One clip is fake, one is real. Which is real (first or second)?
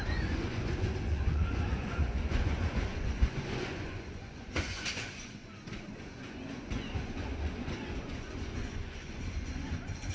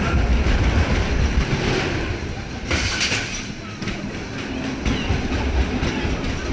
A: second